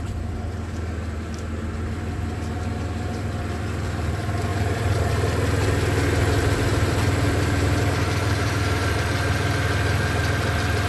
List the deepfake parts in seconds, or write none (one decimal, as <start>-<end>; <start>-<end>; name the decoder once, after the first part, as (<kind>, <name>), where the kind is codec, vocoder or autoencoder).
4.5-5.1 (vocoder, BigVGAN v2); 6.7-9.0